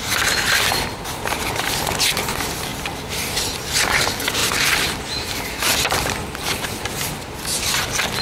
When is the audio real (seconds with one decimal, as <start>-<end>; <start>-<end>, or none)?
0.0-2.7; 4.0-4.4; 5.3-5.7